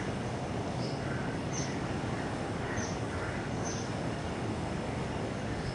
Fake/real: fake